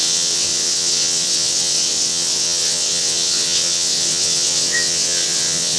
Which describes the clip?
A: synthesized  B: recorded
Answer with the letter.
A